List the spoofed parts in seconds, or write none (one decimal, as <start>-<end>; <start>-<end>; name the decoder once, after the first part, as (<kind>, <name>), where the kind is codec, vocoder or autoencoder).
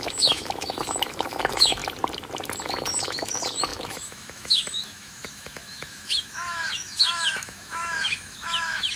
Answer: 0.0-1.8 (autoencoder, DAC-VAE); 2.6-9.0